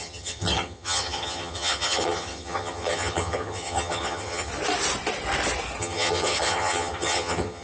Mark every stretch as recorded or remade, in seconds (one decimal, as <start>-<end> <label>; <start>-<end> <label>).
0.0-4.5 remade; 4.5-5.8 recorded; 5.8-7.6 remade